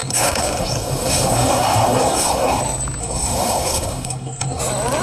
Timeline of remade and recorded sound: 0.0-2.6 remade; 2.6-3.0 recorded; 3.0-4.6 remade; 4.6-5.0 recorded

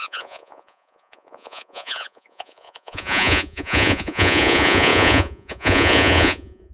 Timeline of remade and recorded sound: 0.0-6.7 remade

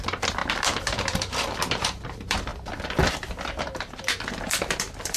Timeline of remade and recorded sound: 0.0-5.2 remade

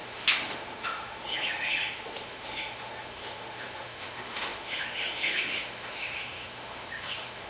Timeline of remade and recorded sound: 0.0-7.5 remade